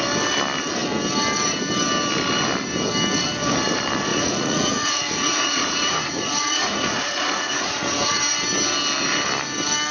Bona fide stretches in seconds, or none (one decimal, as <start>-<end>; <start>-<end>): 0.0-4.1; 8.2-9.9